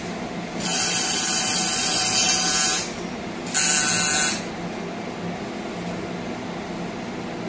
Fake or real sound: real